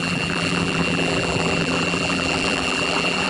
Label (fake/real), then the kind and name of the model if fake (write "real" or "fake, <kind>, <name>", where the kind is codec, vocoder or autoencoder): fake, vocoder, BigVGAN v2